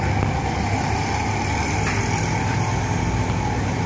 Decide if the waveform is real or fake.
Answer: real